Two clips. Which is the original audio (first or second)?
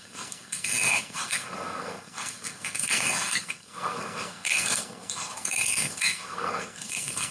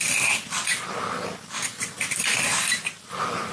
second